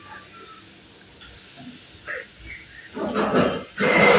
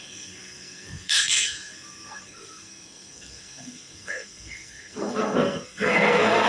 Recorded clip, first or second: first